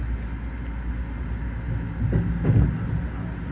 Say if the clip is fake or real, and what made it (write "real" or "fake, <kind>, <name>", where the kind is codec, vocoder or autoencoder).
real